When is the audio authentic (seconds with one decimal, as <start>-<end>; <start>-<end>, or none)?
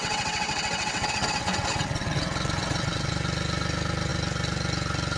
3.1-5.2